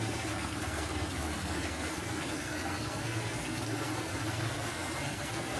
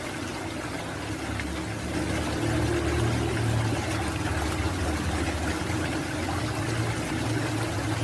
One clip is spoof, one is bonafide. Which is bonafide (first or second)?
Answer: second